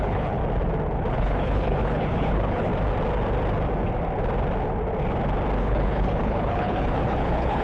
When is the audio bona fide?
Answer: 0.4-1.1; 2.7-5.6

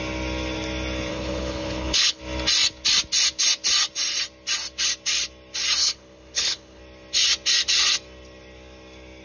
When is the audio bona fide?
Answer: 0.0-1.1; 2.2-5.8; 6.8-9.2

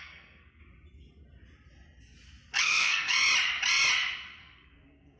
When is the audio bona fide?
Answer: 0.6-2.6; 3.1-4.4

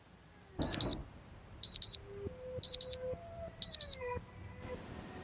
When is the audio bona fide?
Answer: 0.0-5.2